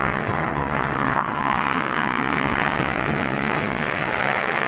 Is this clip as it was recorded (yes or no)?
no